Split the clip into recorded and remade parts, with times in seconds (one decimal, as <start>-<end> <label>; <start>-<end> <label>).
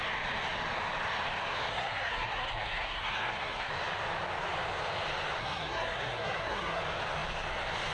0.0-1.7 recorded; 1.7-3.7 remade; 3.7-5.4 recorded; 5.4-6.8 remade; 6.8-7.9 recorded